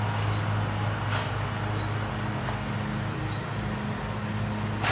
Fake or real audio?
real